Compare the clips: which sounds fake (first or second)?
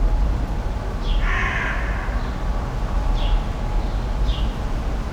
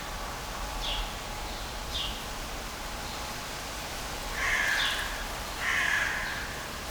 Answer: second